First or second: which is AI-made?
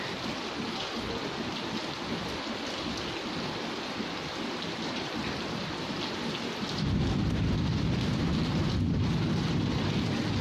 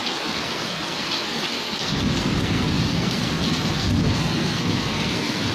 second